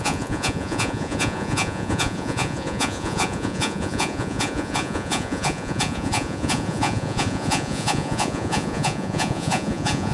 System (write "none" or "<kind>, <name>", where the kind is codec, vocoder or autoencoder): vocoder, Vocos